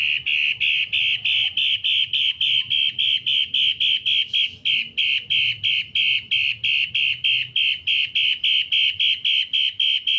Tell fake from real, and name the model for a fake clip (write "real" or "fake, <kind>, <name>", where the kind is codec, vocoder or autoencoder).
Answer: real